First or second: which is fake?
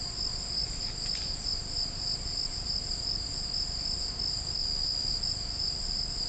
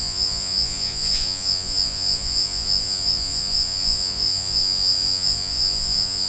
second